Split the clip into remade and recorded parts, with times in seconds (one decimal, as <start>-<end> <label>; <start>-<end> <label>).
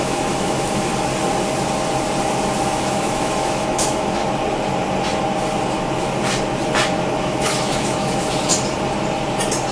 0.0-0.9 remade; 0.9-2.6 recorded; 2.6-4.2 remade; 4.2-7.2 recorded; 7.2-8.5 remade; 8.5-9.7 recorded